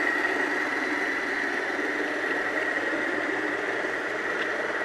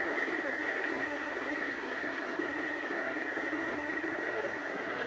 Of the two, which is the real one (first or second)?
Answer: first